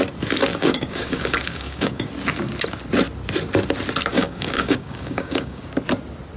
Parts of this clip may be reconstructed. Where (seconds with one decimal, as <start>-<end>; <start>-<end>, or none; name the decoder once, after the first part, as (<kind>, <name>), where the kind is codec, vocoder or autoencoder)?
0.5-2.1 (codec, DAC); 4.1-5.6